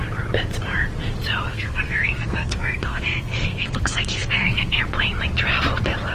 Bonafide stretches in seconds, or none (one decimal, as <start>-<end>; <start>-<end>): 0.0-1.5; 4.8-6.1